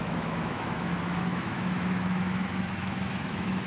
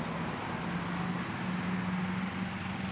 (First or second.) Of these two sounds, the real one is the second